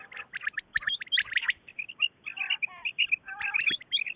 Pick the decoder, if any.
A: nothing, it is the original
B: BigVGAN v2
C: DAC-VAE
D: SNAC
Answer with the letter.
A